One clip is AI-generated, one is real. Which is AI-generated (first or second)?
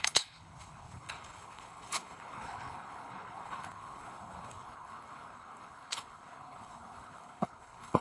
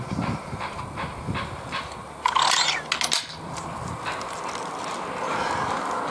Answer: first